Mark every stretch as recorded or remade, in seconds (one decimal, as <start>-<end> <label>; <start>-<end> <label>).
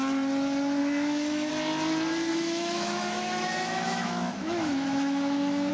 0.0-0.8 recorded; 0.8-1.5 remade; 1.5-2.3 recorded; 2.3-5.7 remade